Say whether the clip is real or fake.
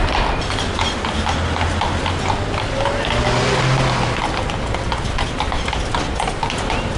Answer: real